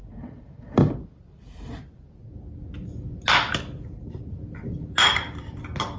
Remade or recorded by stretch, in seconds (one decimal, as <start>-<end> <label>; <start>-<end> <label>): 0.0-6.0 recorded